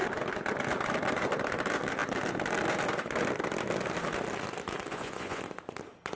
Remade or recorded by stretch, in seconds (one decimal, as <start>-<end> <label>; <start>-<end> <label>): 0.0-4.9 recorded; 4.9-5.4 remade; 5.4-6.2 recorded